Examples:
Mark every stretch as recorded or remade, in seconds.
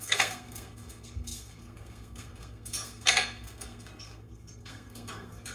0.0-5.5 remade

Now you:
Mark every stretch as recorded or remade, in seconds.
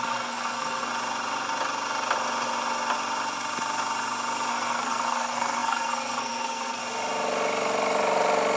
0.0-0.9 remade; 0.9-4.5 recorded; 4.5-6.8 remade; 6.8-8.6 recorded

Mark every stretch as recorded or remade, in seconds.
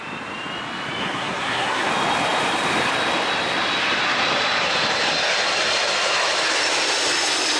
0.0-1.0 recorded; 1.0-1.9 remade; 1.9-7.6 recorded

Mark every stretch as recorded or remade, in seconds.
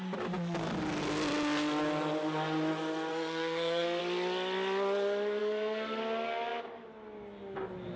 0.0-3.1 recorded; 3.1-4.0 remade; 4.0-5.4 recorded; 5.4-6.0 remade; 6.0-8.0 recorded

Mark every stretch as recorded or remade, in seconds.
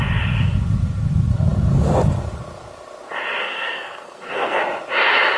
0.0-3.4 recorded; 3.4-4.6 remade; 4.6-5.4 recorded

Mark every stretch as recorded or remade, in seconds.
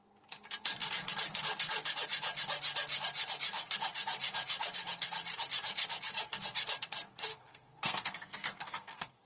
0.0-7.3 recorded; 7.3-9.3 remade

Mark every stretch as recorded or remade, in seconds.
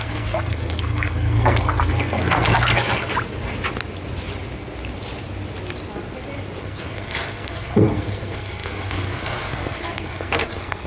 0.0-3.1 remade; 3.1-6.6 recorded; 6.6-10.9 remade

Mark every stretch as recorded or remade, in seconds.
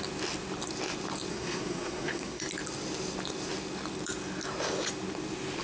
0.0-1.3 recorded; 1.3-2.4 remade; 2.4-5.6 recorded